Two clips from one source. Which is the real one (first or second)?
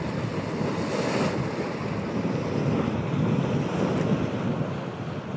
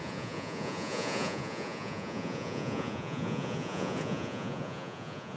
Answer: first